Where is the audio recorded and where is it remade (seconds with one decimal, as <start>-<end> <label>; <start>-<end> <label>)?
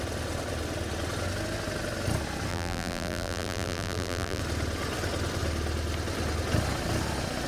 0.0-2.5 recorded; 2.5-4.4 remade; 4.4-7.5 recorded